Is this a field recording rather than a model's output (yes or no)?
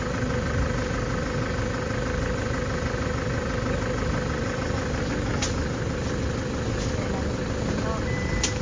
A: yes